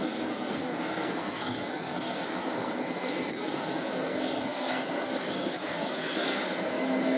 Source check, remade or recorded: remade